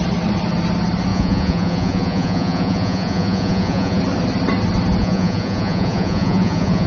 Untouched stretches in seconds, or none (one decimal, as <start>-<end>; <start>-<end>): 0.0-1.1; 4.0-5.0

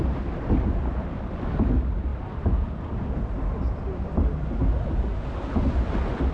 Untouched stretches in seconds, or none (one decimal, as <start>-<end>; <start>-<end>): 0.0-6.3

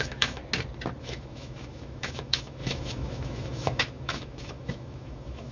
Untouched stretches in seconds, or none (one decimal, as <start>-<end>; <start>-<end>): 0.4-1.0

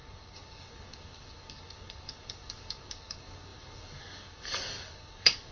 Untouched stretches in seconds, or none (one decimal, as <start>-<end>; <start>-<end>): none

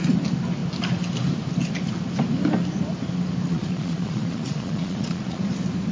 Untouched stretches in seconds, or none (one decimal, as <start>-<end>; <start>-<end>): 0.0-3.5; 5.4-5.9